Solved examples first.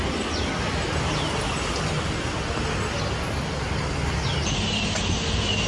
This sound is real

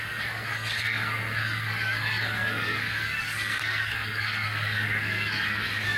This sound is fake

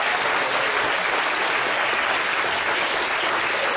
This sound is real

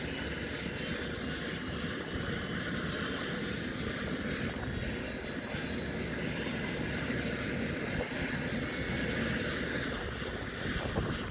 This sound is real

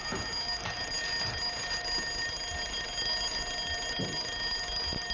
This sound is real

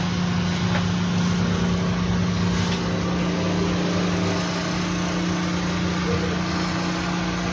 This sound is real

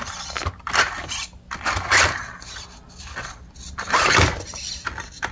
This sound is real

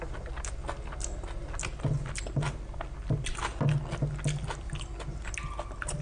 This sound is real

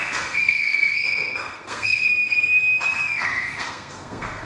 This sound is fake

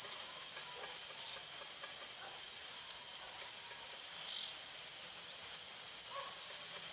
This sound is real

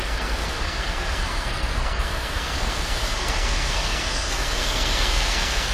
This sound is fake